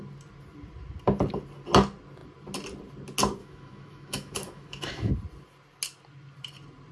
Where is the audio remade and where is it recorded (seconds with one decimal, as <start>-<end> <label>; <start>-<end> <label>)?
0.0-3.4 recorded; 3.4-5.1 remade; 5.1-6.9 recorded